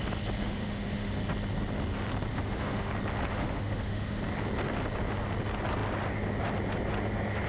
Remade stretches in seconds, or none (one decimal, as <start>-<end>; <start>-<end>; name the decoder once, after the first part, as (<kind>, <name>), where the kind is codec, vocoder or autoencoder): 0.4-1.1 (autoencoder, DAC-VAE); 2.3-2.9; 3.3-4.2